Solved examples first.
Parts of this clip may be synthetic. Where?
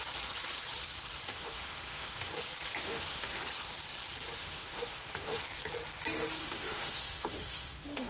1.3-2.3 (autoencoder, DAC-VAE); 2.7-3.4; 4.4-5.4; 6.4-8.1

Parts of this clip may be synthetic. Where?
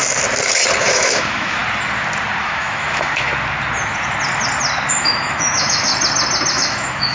0.8-1.6 (autoencoder, DAC-VAE); 2.4-3.3; 4.9-5.9; 6.5-7.1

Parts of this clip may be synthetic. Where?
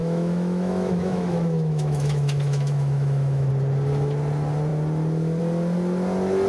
0.0-3.5 (autoencoder, DAC-VAE)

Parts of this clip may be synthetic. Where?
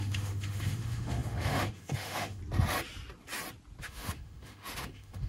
0.0-2.4 (autoencoder, DAC-VAE); 3.8-5.3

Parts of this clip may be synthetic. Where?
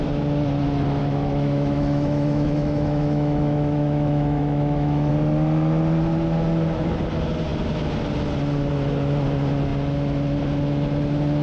1.0-5.1 (autoencoder, DAC-VAE)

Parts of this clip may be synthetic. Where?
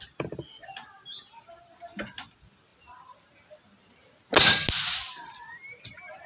none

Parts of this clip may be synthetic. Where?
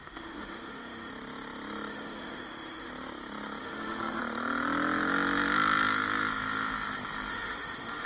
0.0-1.1 (autoencoder, DAC-VAE); 1.9-2.9; 3.6-4.2; 7.3-8.1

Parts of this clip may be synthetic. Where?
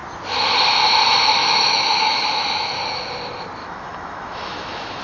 1.4-2.8 (autoencoder, DAC-VAE); 3.6-5.0